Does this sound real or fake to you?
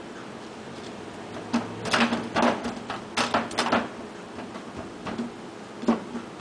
real